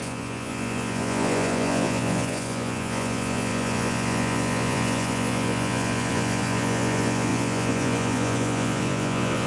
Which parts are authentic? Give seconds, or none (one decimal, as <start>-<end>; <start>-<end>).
none